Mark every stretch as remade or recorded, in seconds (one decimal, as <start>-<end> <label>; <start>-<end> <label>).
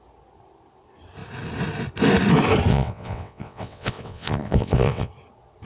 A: 0.0-2.7 recorded; 2.7-5.1 remade; 5.1-5.7 recorded